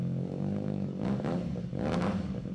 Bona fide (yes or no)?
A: no